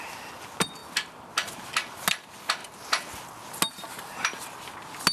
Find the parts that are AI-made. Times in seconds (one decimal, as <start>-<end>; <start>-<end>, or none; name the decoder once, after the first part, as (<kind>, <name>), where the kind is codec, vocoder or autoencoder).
none